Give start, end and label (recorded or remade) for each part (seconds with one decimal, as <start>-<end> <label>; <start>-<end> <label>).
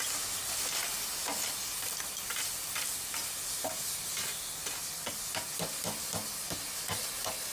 0.0-7.5 recorded